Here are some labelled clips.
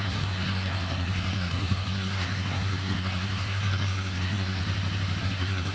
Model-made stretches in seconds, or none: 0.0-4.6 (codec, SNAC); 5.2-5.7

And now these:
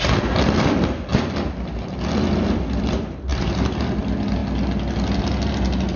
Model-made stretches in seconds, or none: none

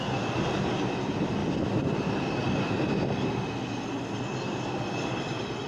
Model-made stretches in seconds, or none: none

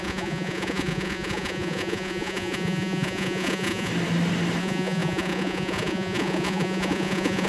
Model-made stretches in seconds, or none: 0.0-3.9 (vocoder, Vocos); 4.6-7.5

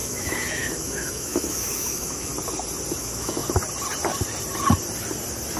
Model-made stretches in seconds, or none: 0.0-2.3 (autoencoder, DAC-VAE); 3.0-3.4

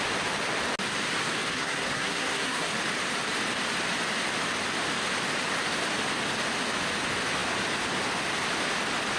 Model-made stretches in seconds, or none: 1.5-2.7 (codec, SNAC)